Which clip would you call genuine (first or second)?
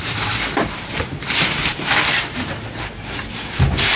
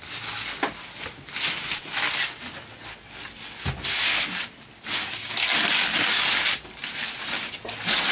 second